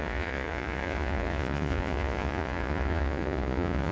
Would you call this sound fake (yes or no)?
yes